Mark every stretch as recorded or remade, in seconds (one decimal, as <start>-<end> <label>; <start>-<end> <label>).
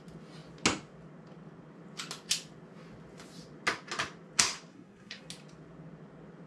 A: 0.0-4.7 recorded; 4.7-5.2 remade; 5.2-6.5 recorded